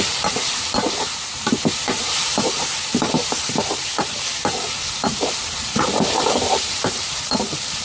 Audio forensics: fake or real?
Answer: fake